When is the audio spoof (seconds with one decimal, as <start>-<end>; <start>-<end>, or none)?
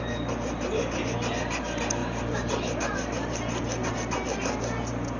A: none